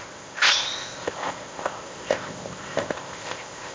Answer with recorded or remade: remade